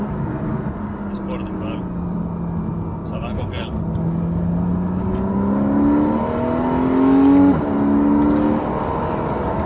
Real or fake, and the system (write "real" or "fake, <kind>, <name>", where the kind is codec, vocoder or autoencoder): real